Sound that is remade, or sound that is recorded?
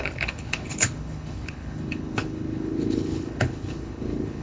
remade